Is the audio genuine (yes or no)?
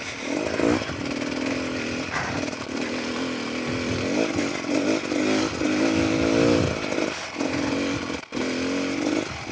yes